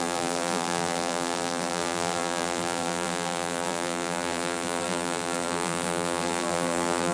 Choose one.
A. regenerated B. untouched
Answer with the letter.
A